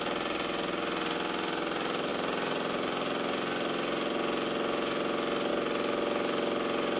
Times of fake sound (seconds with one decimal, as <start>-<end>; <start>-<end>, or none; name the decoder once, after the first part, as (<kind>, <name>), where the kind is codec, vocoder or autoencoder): none